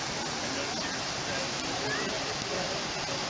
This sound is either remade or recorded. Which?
recorded